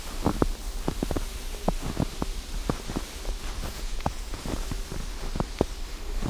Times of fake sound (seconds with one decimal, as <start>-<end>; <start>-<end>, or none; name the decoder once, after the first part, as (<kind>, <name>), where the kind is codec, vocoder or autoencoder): 3.7-4.4 (vocoder, Vocos)